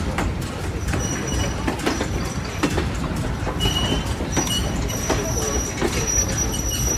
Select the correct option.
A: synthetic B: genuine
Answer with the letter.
A